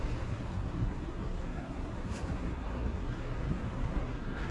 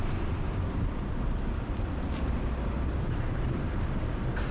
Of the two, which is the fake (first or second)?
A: first